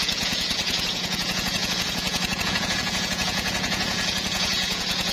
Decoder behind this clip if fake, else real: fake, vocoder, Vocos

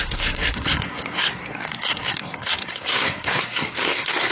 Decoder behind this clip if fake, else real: fake, codec, SNAC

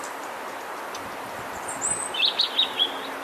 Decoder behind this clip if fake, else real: real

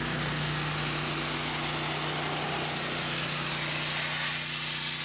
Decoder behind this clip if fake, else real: real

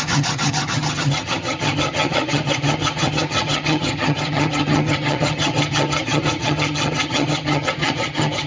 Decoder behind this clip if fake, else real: fake, vocoder, HiFi-GAN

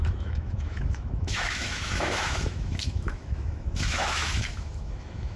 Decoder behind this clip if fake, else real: fake, autoencoder, DAC-VAE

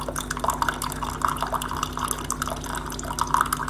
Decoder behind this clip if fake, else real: real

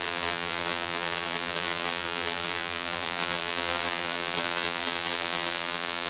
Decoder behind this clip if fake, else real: fake, vocoder, BigVGAN v2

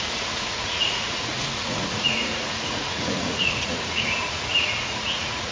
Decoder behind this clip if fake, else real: fake, vocoder, Vocos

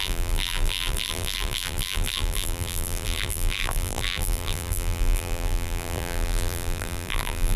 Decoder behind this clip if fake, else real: fake, vocoder, BigVGAN v2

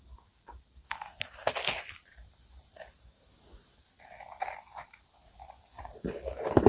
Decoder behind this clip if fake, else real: real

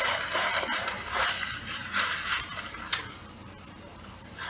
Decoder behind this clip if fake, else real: fake, vocoder, BigVGAN v2